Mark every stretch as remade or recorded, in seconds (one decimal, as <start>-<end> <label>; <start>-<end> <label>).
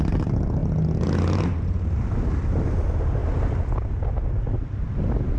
0.0-5.4 recorded